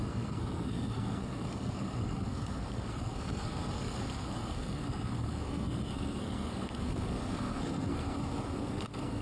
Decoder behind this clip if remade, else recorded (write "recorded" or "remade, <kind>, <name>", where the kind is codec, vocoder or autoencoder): remade, codec, SNAC